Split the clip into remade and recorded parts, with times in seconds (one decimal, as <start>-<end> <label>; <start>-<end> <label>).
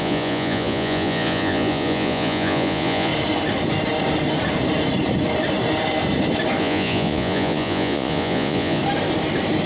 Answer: 0.0-3.1 remade; 3.1-6.6 recorded; 6.6-8.8 remade; 8.8-9.7 recorded